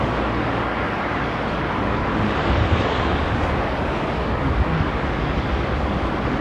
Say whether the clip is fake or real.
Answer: fake